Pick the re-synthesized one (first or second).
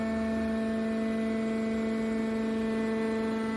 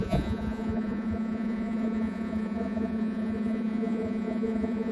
second